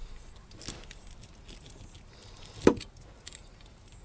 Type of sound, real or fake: real